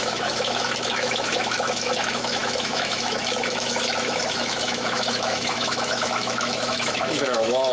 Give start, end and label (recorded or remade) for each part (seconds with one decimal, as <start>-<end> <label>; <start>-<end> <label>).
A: 0.0-7.7 remade